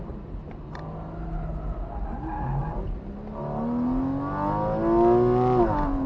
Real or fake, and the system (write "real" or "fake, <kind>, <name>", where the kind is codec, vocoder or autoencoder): real